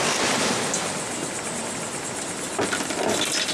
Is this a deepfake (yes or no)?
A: no